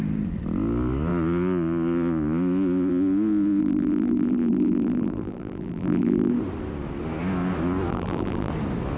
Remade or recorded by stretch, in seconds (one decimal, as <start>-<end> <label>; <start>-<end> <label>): 0.0-3.6 recorded; 3.6-6.3 remade; 6.3-7.9 recorded; 7.9-8.5 remade; 8.5-9.0 recorded